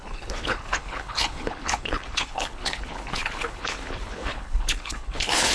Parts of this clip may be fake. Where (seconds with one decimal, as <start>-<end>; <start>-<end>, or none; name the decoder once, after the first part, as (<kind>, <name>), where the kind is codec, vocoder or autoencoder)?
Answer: 0.0-5.5 (codec, HILCodec)